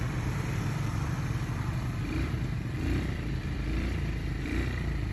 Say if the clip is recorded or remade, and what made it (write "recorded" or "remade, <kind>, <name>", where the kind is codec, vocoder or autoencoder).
remade, vocoder, BigVGAN v2